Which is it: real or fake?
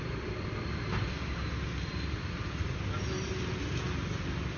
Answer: real